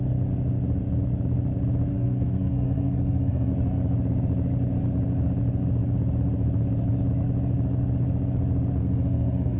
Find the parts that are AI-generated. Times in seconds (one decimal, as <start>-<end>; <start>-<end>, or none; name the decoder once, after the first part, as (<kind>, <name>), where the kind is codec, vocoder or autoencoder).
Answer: 1.9-3.5 (codec, SNAC); 8.8-9.6